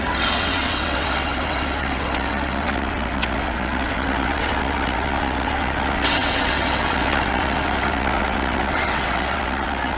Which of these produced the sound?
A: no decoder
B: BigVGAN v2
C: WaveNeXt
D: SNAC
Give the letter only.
C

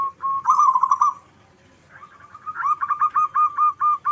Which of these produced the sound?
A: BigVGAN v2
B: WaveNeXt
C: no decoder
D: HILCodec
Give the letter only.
C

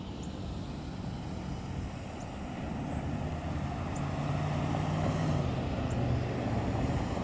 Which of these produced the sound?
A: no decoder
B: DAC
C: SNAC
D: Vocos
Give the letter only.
A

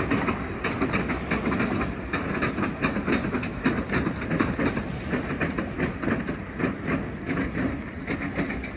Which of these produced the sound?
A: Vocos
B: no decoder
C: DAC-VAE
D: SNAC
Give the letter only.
B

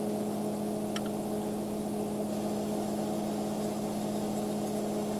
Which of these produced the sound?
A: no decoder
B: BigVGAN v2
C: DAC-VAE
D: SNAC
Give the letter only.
A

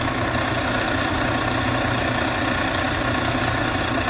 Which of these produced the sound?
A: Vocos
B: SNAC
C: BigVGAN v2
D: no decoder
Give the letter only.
D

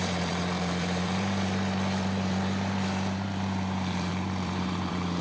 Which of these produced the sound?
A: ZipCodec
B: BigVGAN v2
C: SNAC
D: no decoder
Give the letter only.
B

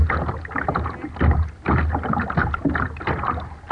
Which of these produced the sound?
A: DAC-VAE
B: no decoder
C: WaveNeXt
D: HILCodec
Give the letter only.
B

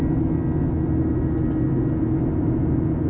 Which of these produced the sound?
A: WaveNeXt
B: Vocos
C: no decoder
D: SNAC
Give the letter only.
C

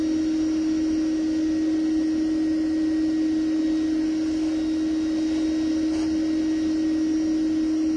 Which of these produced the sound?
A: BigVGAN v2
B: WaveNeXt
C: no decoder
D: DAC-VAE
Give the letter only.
C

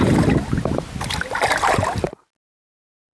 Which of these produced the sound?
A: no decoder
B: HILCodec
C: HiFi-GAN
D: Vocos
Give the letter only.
A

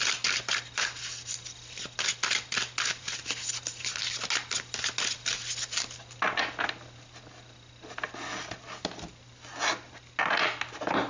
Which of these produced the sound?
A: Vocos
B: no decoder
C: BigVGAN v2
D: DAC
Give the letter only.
B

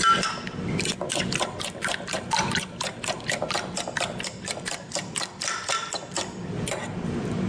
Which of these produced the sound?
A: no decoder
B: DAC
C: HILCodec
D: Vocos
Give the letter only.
A